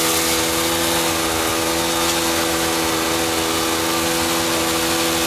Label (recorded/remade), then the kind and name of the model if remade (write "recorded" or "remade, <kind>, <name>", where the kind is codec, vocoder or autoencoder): recorded